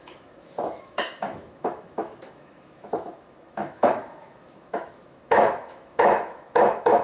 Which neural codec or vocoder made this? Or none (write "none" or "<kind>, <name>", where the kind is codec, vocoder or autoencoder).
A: autoencoder, DAC-VAE